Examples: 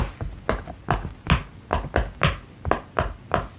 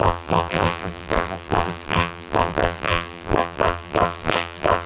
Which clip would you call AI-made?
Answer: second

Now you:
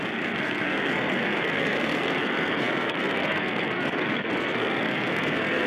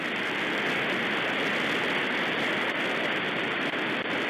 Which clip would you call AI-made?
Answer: first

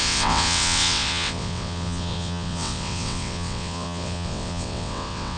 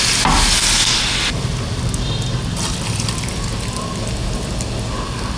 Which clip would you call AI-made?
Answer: first